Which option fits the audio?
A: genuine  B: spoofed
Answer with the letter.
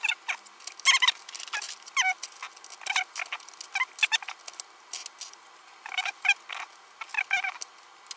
A